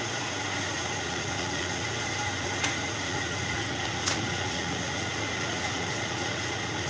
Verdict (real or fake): fake